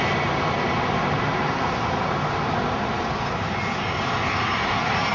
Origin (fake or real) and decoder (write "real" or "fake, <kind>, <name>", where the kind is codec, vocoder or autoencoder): real